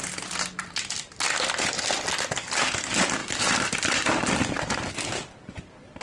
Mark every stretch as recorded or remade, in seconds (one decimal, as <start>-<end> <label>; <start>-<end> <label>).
0.0-3.2 recorded; 3.2-6.0 remade